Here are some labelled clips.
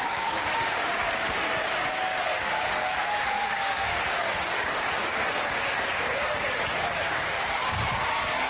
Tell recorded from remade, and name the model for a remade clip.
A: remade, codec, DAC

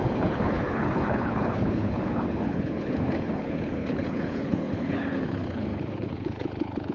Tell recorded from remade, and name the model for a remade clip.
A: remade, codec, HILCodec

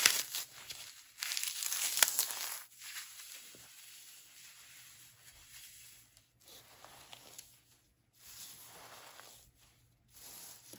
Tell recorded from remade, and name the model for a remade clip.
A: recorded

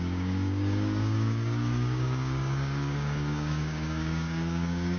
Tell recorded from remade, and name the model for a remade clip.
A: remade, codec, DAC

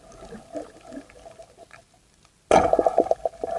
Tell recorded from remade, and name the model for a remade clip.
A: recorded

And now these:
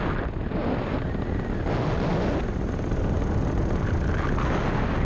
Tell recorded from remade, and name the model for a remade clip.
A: recorded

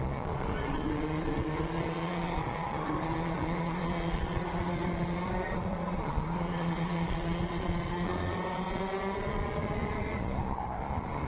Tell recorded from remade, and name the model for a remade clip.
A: remade, vocoder, Vocos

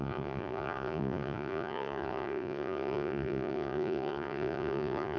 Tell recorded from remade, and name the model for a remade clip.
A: remade, vocoder, Vocos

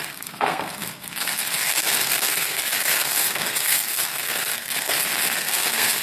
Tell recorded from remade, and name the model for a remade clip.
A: remade, codec, SNAC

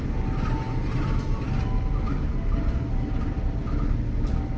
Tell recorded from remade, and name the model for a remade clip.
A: recorded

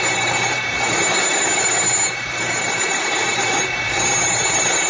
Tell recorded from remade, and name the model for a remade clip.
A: remade, vocoder, BigVGAN v2